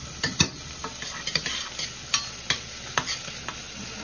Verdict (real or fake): real